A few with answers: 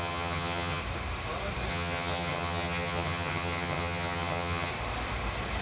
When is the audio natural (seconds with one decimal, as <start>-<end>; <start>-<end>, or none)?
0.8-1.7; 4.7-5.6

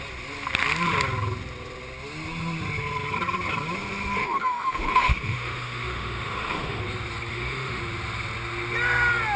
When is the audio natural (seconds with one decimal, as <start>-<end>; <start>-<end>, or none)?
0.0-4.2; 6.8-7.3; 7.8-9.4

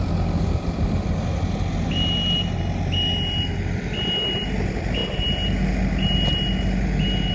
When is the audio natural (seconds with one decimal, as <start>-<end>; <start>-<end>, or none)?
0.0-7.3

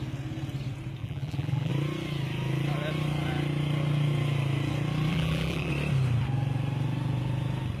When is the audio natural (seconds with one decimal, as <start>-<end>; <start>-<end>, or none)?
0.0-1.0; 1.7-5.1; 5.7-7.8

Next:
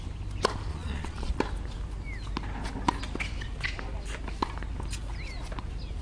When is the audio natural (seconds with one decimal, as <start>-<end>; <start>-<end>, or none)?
0.0-0.7; 1.4-6.0

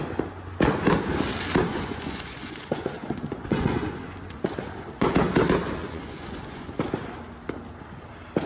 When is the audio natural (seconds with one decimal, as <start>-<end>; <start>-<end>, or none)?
0.0-1.7; 5.1-5.8; 6.8-8.5